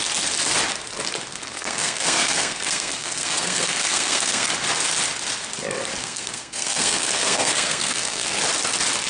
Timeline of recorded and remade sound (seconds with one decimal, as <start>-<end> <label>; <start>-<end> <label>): 0.0-1.3 recorded; 1.3-4.5 remade; 4.5-6.0 recorded; 6.0-8.4 remade; 8.4-9.1 recorded